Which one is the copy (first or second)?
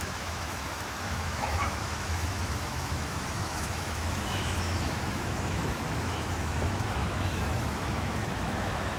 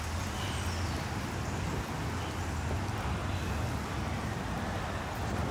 first